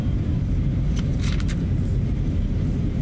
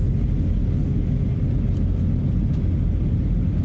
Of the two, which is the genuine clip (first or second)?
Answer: second